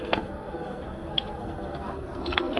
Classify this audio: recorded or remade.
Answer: remade